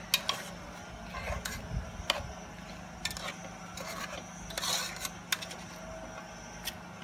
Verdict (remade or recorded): recorded